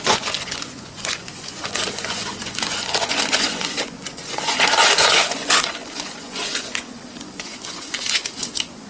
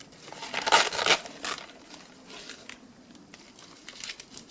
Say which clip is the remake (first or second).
first